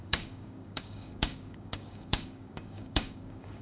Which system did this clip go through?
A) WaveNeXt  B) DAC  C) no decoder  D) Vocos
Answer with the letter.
B